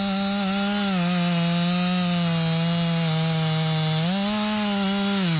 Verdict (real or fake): real